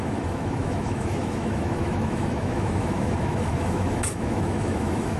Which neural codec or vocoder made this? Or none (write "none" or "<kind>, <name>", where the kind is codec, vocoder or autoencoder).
autoencoder, DAC-VAE